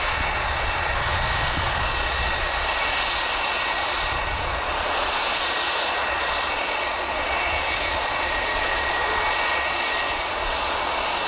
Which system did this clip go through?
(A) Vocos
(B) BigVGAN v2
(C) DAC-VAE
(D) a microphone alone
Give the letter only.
A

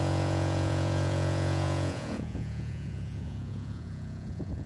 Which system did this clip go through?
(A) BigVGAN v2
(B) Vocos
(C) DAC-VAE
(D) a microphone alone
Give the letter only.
B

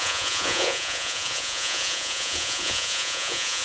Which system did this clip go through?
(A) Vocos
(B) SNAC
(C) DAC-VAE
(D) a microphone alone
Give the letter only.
A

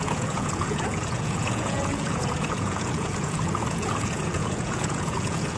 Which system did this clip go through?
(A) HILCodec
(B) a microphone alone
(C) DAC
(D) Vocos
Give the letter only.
D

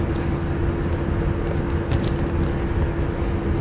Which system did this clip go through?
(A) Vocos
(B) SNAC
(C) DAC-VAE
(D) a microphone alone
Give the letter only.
D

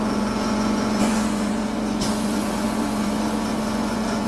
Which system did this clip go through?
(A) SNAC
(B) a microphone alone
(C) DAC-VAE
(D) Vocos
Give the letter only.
D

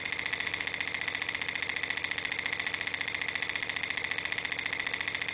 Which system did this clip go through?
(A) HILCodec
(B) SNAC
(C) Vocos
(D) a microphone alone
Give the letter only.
D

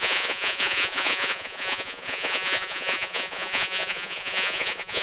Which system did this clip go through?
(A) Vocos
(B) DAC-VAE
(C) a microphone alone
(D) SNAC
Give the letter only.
A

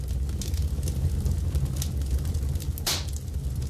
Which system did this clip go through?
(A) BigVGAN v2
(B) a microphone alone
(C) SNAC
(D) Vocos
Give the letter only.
B